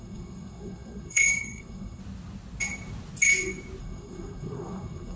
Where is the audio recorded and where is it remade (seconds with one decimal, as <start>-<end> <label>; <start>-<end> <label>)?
0.0-2.0 remade; 2.0-3.8 recorded; 3.8-5.2 remade